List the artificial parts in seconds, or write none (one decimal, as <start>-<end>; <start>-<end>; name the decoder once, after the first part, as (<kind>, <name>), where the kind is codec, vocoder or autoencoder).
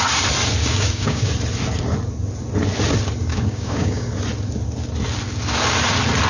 0.6-1.3 (codec, DAC); 3.3-4.1